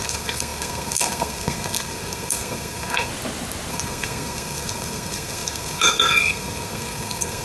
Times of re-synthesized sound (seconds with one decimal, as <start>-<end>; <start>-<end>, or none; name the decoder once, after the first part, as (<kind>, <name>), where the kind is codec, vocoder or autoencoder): 0.0-3.1 (codec, SNAC); 3.7-7.4

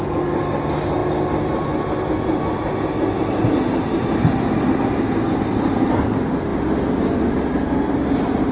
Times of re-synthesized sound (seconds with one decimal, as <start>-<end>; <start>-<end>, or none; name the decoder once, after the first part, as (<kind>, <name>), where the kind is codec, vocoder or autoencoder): none